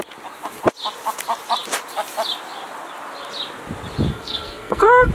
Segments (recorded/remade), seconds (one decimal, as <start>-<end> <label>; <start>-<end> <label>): 0.0-4.1 recorded; 4.1-5.1 remade